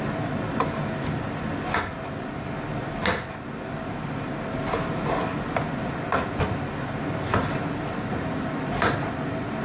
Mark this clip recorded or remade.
recorded